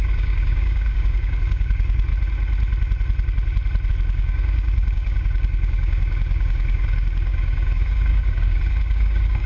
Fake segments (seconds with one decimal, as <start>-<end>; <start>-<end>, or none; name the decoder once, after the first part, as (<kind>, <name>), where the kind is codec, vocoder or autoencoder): 0.0-2.1 (codec, DAC); 3.9-9.5